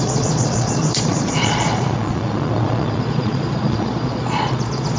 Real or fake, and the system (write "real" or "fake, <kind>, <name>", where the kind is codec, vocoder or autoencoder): fake, vocoder, Vocos